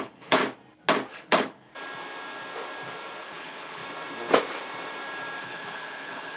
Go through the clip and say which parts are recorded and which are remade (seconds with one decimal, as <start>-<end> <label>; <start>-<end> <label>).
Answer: 0.0-0.4 remade; 0.4-1.1 recorded; 1.1-1.7 remade; 1.7-3.2 recorded; 3.2-3.8 remade; 3.8-5.4 recorded; 5.4-6.4 remade